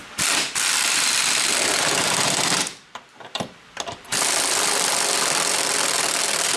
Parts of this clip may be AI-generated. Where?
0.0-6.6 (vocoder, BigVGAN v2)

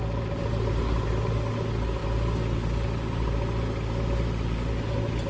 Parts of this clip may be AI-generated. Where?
none

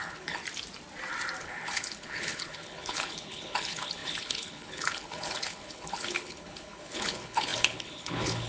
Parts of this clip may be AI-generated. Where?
0.0-0.4 (codec, HILCodec); 1.4-8.5

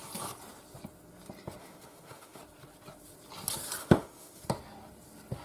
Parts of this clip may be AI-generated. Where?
1.6-2.4 (autoencoder, DAC-VAE); 3.8-4.4

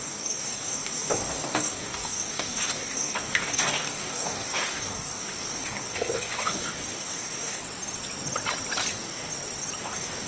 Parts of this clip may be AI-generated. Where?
0.0-7.6 (codec, DAC); 8.9-9.3; 9.8-10.3

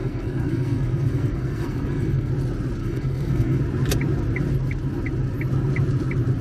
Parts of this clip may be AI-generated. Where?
0.0-2.3 (codec, SNAC); 2.8-3.6